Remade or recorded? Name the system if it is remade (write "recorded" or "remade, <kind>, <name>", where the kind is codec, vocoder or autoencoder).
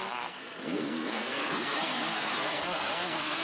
remade, codec, SNAC